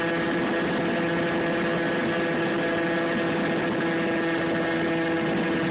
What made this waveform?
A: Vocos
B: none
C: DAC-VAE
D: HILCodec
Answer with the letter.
B